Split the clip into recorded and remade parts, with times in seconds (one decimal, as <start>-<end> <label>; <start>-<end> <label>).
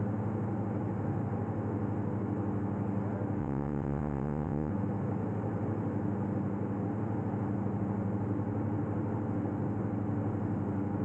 0.0-3.4 recorded; 3.4-4.7 remade; 4.7-11.0 recorded